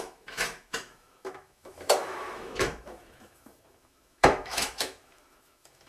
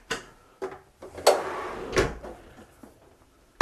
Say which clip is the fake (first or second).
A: first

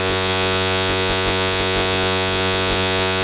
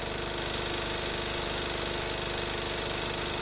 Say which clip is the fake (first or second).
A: first